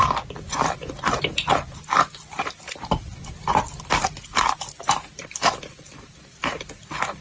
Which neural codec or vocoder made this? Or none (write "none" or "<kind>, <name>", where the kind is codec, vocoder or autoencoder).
none